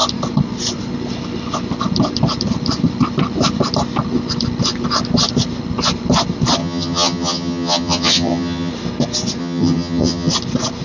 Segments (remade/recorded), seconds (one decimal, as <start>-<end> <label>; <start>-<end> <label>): 0.0-6.6 recorded; 6.6-8.7 remade; 8.7-9.4 recorded; 9.4-10.3 remade; 10.3-10.8 recorded